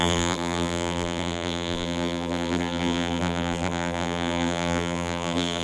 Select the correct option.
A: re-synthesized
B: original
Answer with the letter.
A